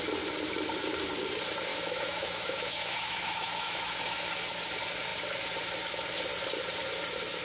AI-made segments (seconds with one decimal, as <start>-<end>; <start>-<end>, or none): 1.7-4.3